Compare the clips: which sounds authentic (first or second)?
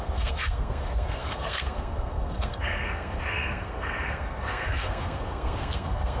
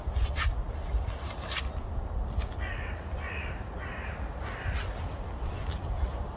second